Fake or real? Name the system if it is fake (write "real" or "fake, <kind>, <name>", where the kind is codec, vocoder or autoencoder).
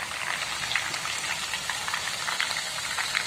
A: real